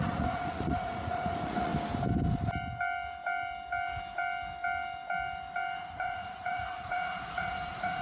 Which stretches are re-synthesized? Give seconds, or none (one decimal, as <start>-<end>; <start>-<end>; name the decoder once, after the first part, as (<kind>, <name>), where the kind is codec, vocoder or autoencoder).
0.0-1.7 (vocoder, Vocos); 5.8-8.0